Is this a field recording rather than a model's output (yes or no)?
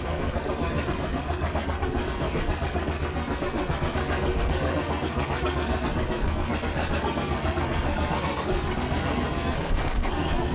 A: no